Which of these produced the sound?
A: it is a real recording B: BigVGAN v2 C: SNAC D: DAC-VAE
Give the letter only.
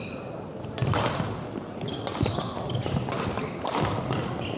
A